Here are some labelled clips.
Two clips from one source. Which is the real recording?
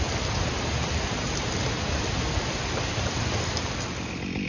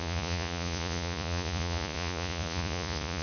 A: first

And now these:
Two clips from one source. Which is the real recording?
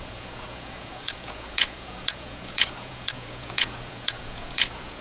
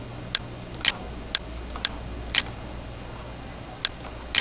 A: second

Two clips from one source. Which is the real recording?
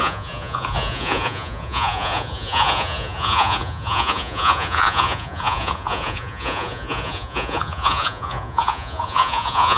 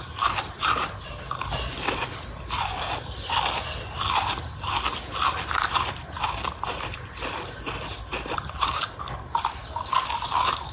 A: second